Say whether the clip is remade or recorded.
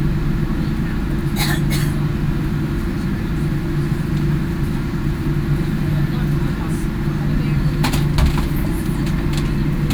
recorded